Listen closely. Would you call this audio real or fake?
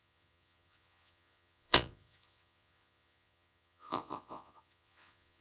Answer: fake